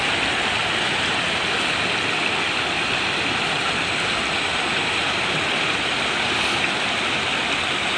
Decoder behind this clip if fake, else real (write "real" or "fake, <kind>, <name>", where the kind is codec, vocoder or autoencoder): real